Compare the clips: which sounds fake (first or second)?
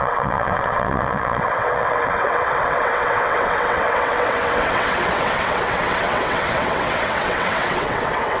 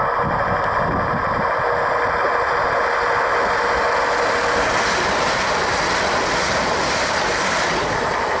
first